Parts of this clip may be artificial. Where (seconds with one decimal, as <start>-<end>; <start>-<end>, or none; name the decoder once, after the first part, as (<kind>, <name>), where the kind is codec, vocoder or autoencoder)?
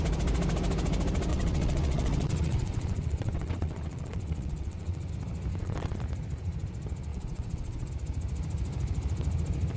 1.3-5.1 (vocoder, WaveNeXt); 5.5-6.0; 7.1-7.9